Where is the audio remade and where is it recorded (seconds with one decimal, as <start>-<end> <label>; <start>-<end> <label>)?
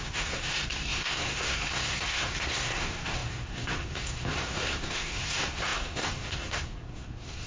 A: 0.0-7.5 remade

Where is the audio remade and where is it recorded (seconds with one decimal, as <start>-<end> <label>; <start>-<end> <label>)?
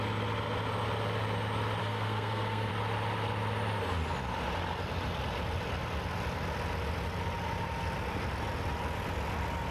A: 0.0-1.8 recorded; 1.8-2.7 remade; 2.7-9.7 recorded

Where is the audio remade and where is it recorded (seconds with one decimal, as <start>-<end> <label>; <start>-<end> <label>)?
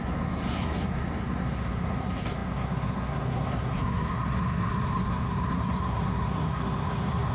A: 0.0-7.3 remade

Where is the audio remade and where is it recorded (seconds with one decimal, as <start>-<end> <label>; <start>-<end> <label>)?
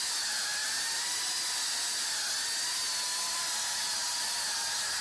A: 0.0-5.0 recorded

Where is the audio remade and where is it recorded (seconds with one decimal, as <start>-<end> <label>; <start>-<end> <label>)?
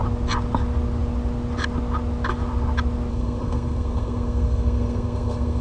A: 0.0-3.1 recorded; 3.1-5.6 remade